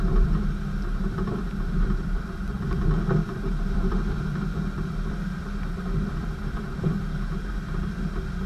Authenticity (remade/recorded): remade